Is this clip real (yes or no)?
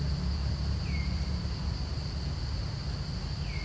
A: yes